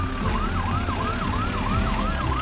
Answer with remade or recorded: recorded